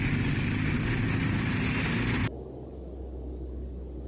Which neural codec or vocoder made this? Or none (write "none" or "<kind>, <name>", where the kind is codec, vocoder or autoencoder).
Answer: none